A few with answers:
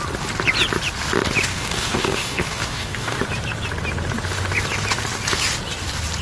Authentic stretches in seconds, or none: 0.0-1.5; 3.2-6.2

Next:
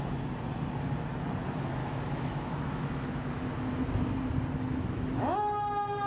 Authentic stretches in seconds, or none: 0.0-1.8; 3.3-4.7; 5.4-6.1

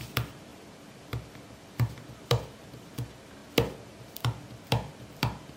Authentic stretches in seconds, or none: 0.5-1.5; 3.4-4.0

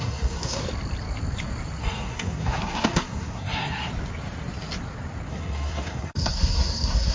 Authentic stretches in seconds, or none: 0.6-1.8; 3.9-5.3

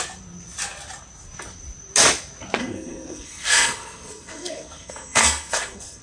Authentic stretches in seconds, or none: 0.0-2.6

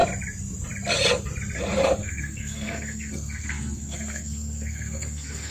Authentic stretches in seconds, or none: 0.0-2.0